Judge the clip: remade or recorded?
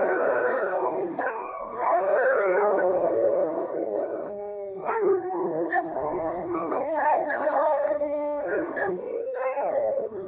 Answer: remade